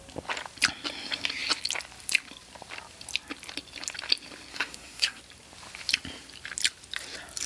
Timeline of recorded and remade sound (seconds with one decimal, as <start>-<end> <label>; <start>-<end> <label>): 0.0-4.5 recorded; 4.5-5.2 remade; 5.2-7.5 recorded